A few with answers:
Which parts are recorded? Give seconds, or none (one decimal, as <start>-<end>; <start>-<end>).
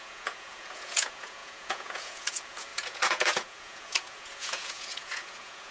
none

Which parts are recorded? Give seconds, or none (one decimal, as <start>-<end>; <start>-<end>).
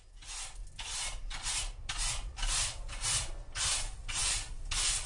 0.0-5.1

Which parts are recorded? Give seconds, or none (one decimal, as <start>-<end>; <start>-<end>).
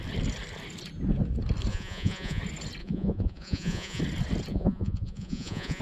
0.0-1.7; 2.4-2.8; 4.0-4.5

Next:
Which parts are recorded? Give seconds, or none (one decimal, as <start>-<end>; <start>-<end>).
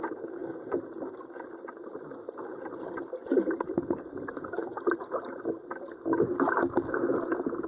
0.0-7.7